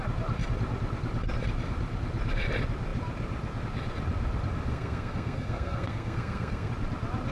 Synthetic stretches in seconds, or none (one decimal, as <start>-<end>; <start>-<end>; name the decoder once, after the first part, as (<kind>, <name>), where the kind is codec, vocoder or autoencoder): 4.7-6.7 (codec, SNAC)